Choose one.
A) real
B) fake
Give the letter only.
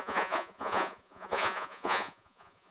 B